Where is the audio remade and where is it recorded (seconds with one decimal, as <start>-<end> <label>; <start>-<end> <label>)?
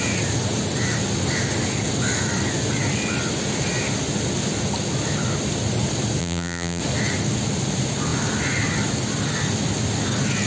0.0-6.2 recorded; 6.2-6.8 remade; 6.8-10.5 recorded